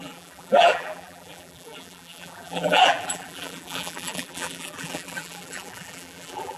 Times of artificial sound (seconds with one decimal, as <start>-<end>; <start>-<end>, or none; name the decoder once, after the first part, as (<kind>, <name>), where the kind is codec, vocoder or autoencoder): 0.0-6.6 (vocoder, BigVGAN v2)